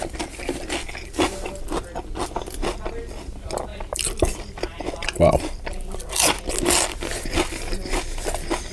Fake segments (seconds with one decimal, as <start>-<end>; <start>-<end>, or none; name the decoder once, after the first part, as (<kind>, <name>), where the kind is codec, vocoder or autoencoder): 3.7-6.1 (vocoder, BigVGAN v2)